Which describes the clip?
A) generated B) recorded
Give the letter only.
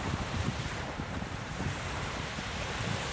A